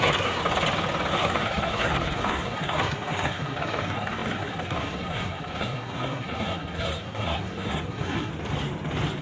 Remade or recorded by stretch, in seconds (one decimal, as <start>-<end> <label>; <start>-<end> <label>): 0.0-0.4 remade; 0.4-1.1 recorded; 1.1-8.3 remade; 8.3-9.2 recorded